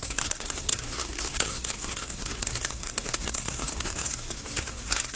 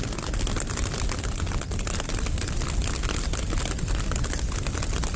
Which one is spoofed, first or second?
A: first